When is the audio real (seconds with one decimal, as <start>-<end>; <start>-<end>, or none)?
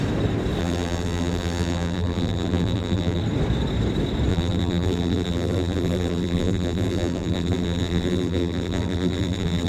0.0-0.6; 3.2-4.3